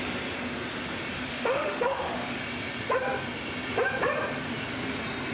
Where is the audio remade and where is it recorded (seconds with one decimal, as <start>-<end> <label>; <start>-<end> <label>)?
0.0-1.3 recorded; 1.3-2.4 remade; 2.4-5.3 recorded